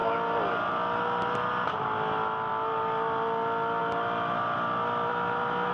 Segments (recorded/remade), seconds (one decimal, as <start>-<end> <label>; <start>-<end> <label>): 0.0-0.7 recorded; 0.7-2.5 remade; 2.5-3.8 recorded; 3.8-5.7 remade